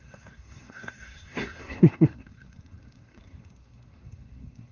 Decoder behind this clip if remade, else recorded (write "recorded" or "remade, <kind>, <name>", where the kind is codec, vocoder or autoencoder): remade, codec, SNAC